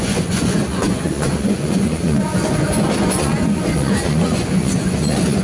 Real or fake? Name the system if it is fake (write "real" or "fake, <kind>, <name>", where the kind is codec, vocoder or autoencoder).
fake, vocoder, Vocos